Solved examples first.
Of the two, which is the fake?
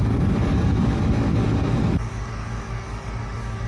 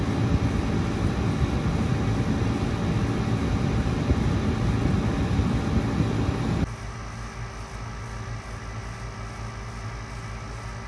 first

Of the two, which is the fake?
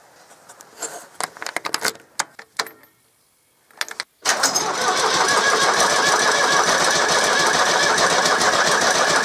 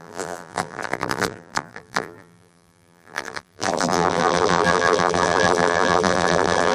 second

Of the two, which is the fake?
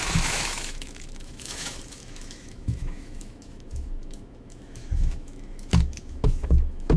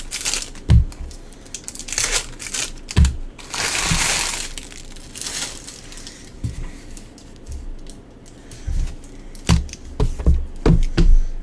first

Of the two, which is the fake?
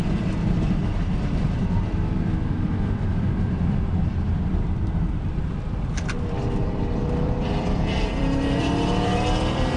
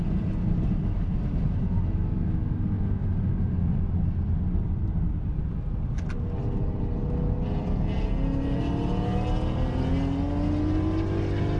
first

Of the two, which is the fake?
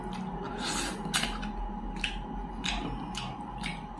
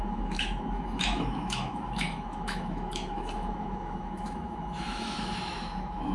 second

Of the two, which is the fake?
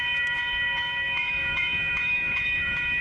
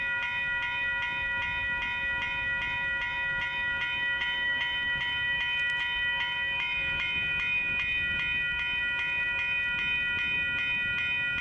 first